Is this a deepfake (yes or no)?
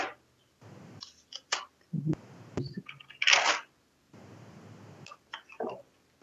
no